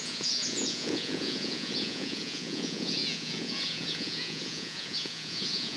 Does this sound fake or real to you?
fake